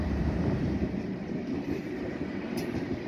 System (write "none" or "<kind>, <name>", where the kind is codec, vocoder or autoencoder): vocoder, BigVGAN v2